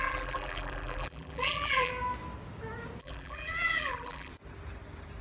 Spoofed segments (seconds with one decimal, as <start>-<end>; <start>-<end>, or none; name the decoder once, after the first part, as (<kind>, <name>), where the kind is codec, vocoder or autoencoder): 0.0-1.9 (vocoder, BigVGAN v2); 3.0-4.3